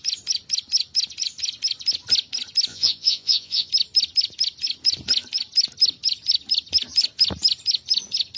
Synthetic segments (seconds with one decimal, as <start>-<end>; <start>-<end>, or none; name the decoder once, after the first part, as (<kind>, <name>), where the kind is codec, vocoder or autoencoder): 2.7-3.7 (vocoder, Vocos)